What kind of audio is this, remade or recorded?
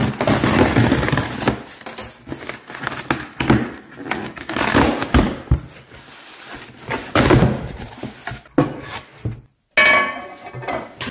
recorded